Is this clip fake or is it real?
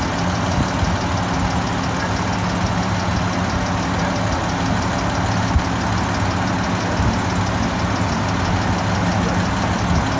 real